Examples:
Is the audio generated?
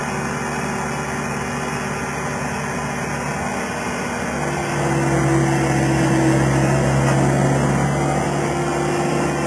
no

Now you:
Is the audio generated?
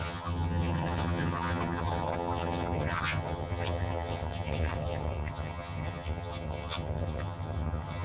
yes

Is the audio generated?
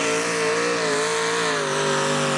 no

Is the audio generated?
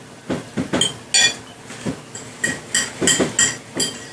no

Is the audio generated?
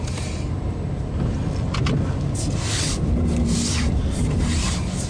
no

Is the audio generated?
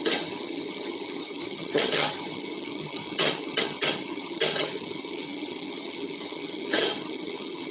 yes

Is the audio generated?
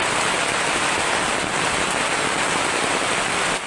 no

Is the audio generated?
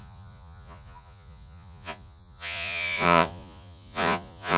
yes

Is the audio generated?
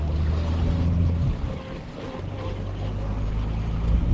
no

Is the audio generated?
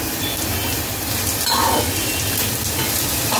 yes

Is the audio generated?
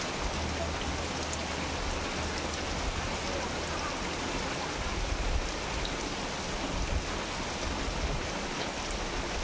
no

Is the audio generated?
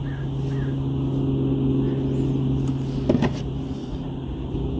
no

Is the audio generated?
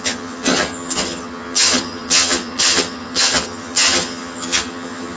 yes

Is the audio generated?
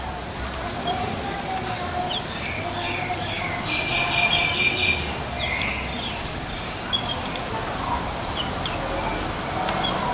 no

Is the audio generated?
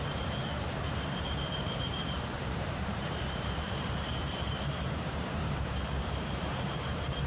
yes